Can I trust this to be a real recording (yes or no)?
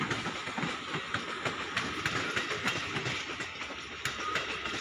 yes